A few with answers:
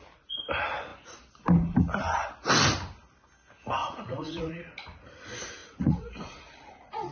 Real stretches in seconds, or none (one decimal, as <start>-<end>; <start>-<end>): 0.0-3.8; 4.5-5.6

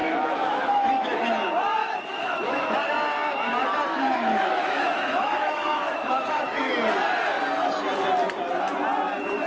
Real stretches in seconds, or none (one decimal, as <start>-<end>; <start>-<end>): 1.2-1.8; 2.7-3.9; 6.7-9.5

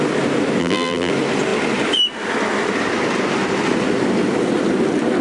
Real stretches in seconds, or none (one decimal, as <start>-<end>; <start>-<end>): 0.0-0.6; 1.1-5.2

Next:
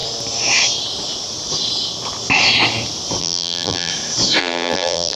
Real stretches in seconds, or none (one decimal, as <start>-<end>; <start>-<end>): 0.0-3.2; 3.9-4.4